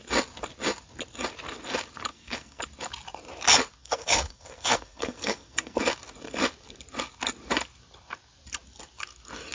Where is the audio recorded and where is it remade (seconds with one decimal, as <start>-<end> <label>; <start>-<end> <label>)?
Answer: 0.0-2.1 recorded; 2.1-2.6 remade; 2.6-3.8 recorded; 3.8-5.8 remade; 5.8-9.5 recorded